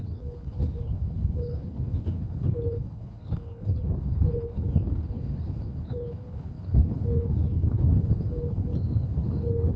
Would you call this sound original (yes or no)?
no